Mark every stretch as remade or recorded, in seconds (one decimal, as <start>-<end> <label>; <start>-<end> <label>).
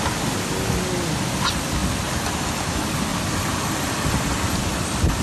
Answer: 0.0-3.1 recorded; 3.1-3.9 remade; 3.9-5.2 recorded